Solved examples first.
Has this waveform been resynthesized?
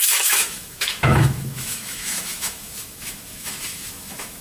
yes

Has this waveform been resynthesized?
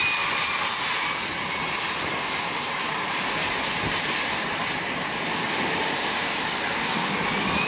no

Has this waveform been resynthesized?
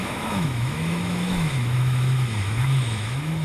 yes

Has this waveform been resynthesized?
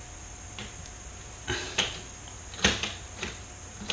no